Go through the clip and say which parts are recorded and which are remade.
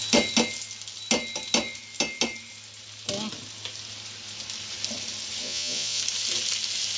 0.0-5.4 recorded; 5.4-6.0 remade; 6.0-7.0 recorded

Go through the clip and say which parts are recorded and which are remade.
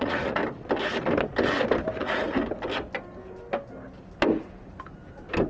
0.0-0.4 remade; 0.4-2.0 recorded; 2.0-2.4 remade; 2.4-5.5 recorded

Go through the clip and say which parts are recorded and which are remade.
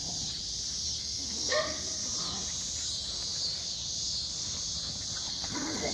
0.0-1.0 recorded; 1.0-2.0 remade; 2.0-5.3 recorded; 5.3-5.9 remade